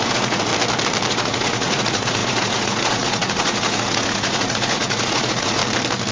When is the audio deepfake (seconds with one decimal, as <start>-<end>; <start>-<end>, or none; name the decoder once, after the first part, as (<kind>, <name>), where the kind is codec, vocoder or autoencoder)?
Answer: 0.0-0.5 (vocoder, Vocos); 1.1-5.6